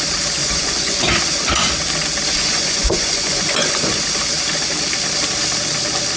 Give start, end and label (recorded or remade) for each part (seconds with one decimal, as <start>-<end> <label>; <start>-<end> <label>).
0.0-0.4 recorded; 0.4-1.1 remade; 1.1-2.3 recorded; 2.3-3.9 remade; 3.9-6.2 recorded